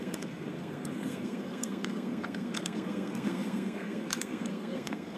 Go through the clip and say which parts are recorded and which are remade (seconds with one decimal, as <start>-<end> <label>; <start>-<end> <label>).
0.0-5.2 remade